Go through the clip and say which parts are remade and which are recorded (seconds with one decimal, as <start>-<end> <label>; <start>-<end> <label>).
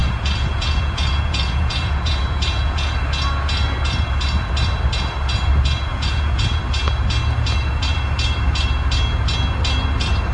0.0-2.9 remade; 2.9-5.9 recorded; 5.9-6.6 remade; 6.6-10.3 recorded